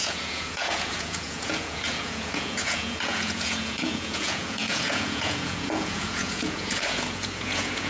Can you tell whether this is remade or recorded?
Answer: remade